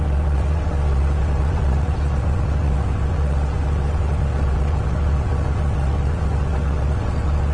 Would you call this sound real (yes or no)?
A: no